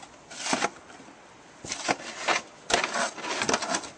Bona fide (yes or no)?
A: yes